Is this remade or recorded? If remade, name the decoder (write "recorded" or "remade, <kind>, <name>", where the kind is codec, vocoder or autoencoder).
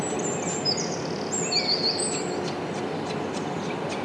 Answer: recorded